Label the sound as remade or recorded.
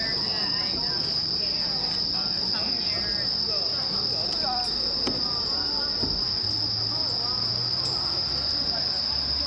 recorded